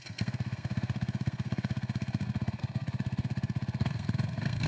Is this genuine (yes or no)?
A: no